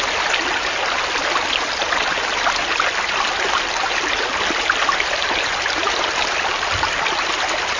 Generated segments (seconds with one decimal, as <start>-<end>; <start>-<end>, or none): none